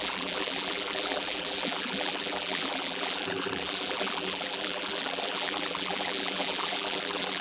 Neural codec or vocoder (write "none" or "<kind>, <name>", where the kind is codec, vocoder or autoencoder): vocoder, BigVGAN v2